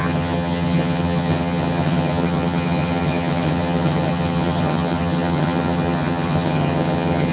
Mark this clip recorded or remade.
remade